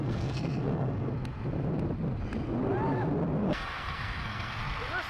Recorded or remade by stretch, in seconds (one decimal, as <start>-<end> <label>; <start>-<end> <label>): 0.0-1.1 remade; 1.1-3.5 recorded; 3.5-4.6 remade; 4.6-5.1 recorded

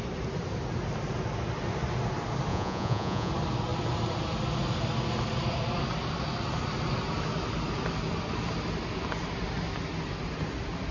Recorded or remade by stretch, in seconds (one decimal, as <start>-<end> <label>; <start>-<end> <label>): 0.0-2.5 recorded; 2.5-3.3 remade; 3.3-10.9 recorded